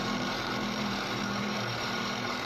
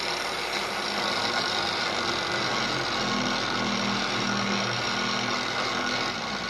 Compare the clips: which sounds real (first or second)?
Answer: second